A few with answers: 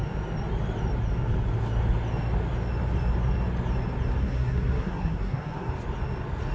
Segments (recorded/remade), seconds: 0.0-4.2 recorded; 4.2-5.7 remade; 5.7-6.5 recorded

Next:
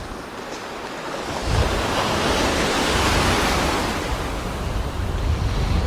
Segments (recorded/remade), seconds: 0.0-5.9 recorded

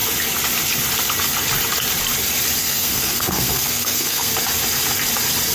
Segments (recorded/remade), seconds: 0.0-2.6 recorded; 2.6-4.3 remade; 4.3-5.5 recorded

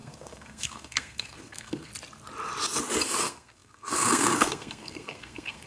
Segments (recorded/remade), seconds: 0.0-1.9 remade; 1.9-3.2 recorded; 3.2-5.7 remade

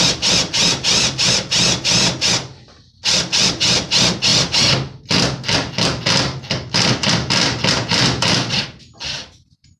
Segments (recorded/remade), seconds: 0.0-9.8 recorded

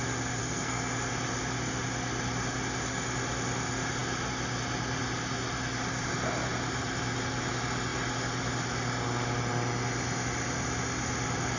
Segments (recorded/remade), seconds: 0.0-0.4 recorded; 0.4-0.9 remade; 0.9-11.6 recorded

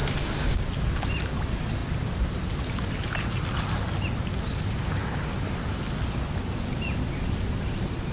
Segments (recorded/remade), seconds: 0.0-8.1 recorded